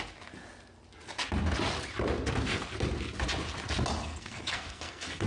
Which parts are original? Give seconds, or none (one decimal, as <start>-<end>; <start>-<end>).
0.0-4.0